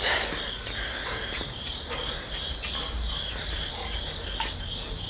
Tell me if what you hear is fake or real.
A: real